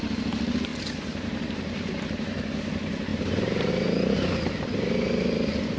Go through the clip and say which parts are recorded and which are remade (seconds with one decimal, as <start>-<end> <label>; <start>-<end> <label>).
0.0-0.7 recorded; 0.7-1.9 remade; 1.9-3.1 recorded; 3.1-3.7 remade; 3.7-5.8 recorded